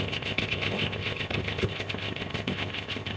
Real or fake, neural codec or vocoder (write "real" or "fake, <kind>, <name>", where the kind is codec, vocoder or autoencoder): fake, codec, ZipCodec